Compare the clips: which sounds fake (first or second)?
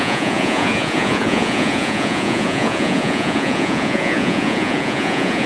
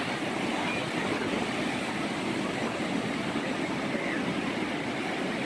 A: first